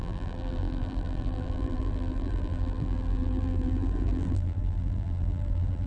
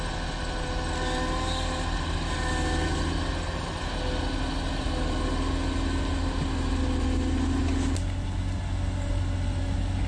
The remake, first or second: first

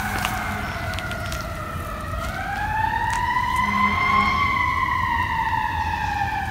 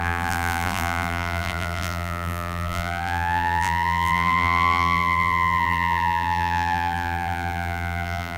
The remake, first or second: second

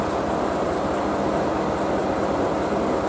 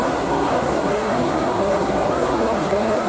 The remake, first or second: second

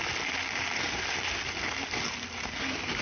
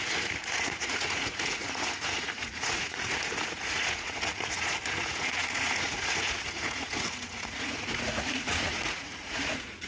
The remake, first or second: second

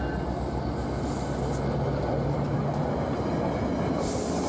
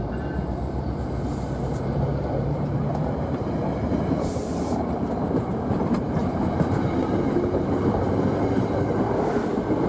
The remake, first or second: second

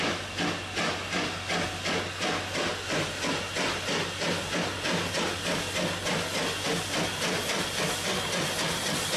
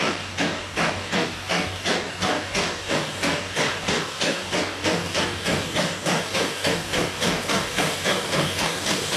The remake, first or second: second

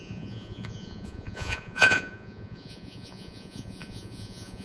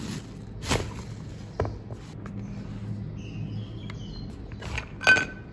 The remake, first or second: first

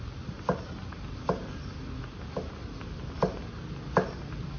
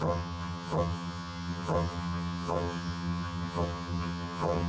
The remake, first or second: second